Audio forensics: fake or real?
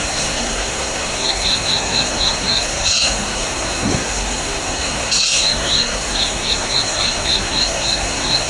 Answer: fake